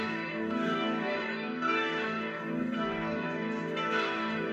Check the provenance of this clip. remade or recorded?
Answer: remade